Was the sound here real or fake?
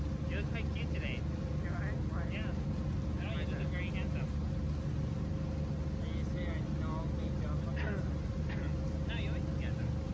real